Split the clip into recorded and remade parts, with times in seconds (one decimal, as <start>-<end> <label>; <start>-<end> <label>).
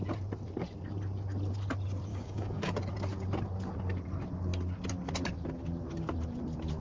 0.0-2.1 recorded; 2.1-2.7 remade; 2.7-6.8 recorded